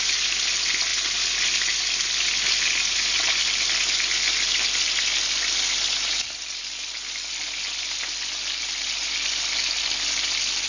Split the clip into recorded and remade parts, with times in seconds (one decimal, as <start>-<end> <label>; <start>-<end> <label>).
0.0-10.7 recorded